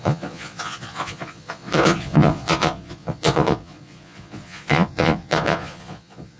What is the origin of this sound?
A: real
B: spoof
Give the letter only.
B